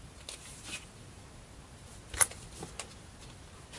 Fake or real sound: real